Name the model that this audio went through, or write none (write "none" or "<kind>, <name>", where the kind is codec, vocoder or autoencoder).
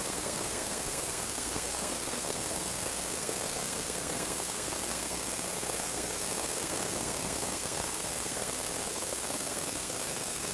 codec, SNAC